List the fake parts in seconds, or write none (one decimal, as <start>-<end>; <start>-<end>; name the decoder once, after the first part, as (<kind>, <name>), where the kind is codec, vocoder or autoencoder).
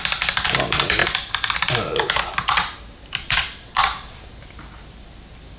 3.2-4.2 (vocoder, WaveNeXt)